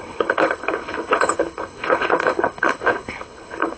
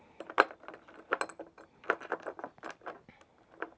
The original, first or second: second